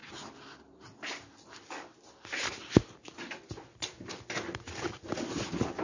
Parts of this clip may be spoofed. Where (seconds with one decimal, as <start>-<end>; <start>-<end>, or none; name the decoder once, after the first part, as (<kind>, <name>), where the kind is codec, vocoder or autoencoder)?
none

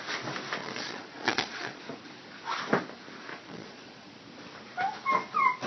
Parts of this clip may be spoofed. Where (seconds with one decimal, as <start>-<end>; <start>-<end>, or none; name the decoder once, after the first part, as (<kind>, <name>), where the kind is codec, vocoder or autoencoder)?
0.6-1.8 (vocoder, Vocos); 3.3-4.2

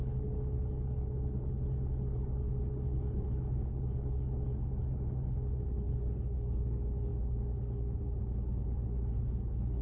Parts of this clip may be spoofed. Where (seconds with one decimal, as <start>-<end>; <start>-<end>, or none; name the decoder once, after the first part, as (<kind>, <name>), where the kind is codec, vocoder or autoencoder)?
0.0-9.8 (codec, HILCodec)